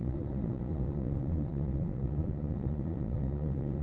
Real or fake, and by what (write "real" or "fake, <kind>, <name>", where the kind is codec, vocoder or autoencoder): fake, vocoder, Vocos